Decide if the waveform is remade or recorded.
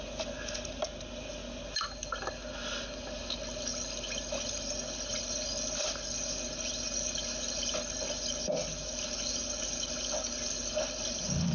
recorded